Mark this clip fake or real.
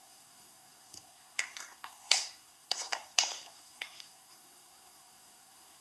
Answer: fake